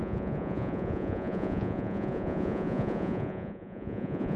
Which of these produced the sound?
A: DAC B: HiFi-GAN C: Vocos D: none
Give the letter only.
C